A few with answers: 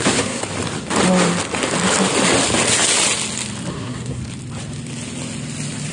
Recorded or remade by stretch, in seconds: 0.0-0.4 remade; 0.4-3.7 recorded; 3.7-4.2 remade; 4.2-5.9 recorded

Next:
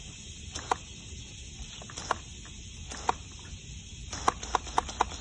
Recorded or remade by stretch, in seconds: 0.0-5.2 recorded

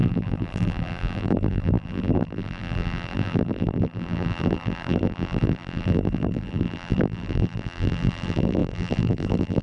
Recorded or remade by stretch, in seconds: 0.0-9.6 remade